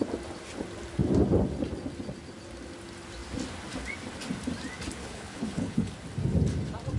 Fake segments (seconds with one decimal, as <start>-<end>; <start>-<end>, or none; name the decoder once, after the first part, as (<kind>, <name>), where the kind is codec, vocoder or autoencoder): 5.0-5.9 (codec, HILCodec)